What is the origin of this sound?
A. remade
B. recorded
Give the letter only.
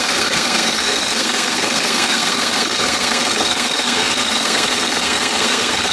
A